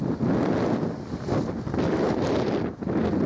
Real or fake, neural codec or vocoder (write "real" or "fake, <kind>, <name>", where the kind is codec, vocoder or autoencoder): real